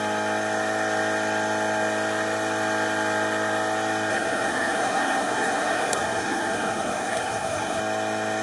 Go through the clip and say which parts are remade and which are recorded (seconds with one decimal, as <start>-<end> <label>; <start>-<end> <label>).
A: 0.0-4.1 recorded; 4.1-7.8 remade; 7.8-8.4 recorded